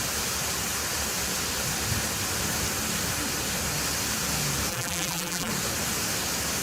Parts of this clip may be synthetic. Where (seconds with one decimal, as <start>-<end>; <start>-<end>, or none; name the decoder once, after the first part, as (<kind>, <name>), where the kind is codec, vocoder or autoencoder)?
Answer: 4.7-5.5 (vocoder, BigVGAN v2)